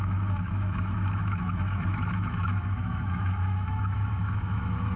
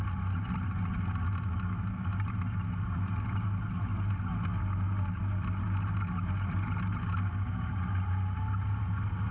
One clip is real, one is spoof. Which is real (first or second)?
second